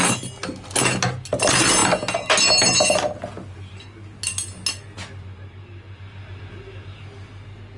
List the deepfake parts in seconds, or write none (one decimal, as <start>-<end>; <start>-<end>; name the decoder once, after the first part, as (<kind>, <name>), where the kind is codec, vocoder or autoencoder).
none